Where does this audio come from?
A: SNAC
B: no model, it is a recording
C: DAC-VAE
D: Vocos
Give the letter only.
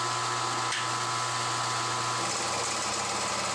B